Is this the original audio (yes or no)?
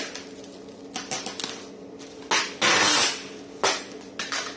yes